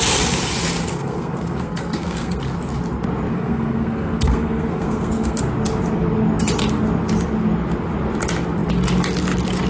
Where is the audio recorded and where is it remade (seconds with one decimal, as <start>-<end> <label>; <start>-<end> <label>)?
0.0-0.9 recorded; 0.9-2.4 remade; 2.4-3.3 recorded; 3.3-5.4 remade; 5.4-9.7 recorded